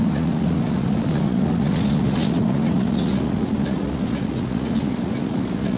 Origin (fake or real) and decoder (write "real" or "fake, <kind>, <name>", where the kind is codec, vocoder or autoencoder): fake, vocoder, Vocos